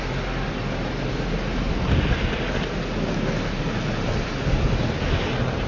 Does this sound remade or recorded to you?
recorded